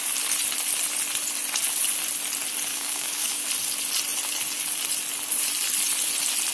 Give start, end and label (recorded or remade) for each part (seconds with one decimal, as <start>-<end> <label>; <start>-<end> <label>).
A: 0.0-2.7 recorded; 2.7-3.5 remade; 3.5-6.5 recorded